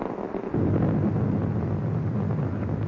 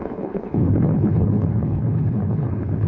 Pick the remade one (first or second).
second